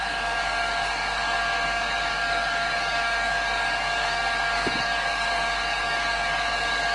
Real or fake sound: fake